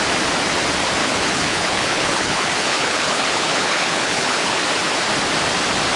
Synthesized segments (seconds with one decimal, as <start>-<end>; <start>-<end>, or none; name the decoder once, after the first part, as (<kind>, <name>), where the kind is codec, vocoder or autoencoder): 1.0-4.6 (codec, HILCodec)